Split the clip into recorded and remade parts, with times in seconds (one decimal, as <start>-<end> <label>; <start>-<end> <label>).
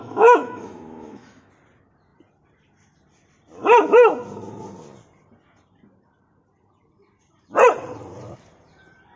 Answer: 0.0-1.5 remade; 1.5-9.2 recorded